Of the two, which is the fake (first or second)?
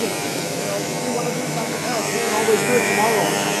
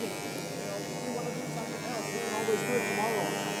first